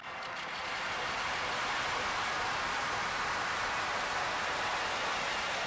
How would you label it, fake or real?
real